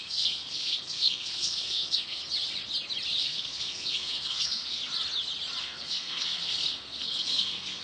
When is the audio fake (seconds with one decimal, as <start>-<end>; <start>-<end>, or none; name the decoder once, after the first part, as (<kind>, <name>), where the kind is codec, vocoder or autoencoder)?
0.0-2.2 (codec, SNAC); 3.2-4.8; 5.6-7.8